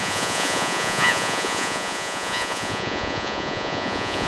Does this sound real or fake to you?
fake